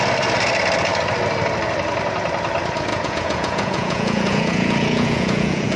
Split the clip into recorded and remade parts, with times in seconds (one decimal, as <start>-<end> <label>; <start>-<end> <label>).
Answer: 0.0-2.9 recorded; 2.9-5.8 remade